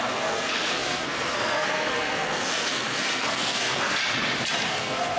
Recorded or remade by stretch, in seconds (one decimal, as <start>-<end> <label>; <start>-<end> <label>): 0.0-4.0 remade; 4.0-4.7 recorded; 4.7-5.2 remade